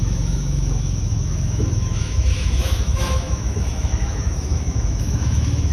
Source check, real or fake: fake